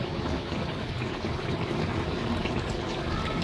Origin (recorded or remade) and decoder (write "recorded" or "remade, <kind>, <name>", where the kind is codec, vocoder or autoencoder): remade, codec, DAC